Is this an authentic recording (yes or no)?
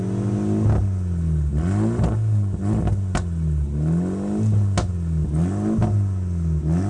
yes